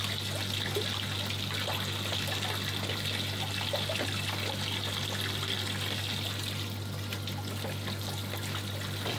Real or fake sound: real